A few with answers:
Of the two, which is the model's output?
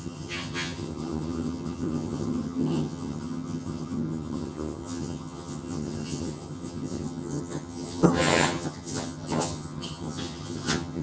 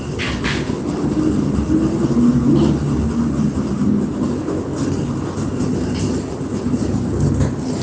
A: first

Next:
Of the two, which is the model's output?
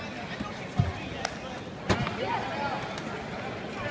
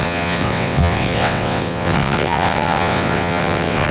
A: second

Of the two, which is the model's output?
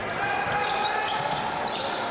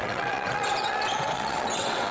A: second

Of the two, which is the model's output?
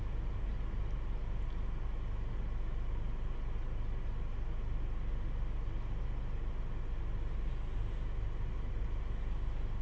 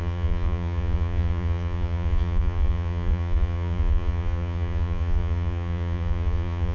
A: second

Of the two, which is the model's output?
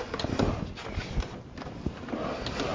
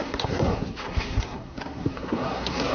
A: second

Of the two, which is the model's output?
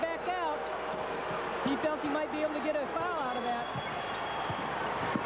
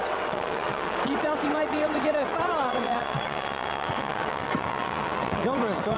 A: second